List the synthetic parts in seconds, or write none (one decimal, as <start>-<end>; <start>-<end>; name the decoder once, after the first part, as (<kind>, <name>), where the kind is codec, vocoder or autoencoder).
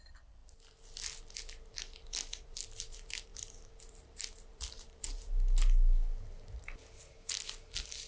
none